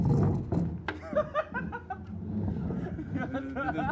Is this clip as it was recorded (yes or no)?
yes